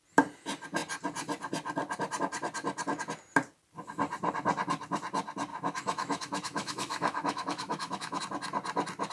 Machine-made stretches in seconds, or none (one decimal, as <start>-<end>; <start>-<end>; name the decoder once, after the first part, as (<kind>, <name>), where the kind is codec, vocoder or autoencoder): 5.5-8.2 (autoencoder, DAC-VAE)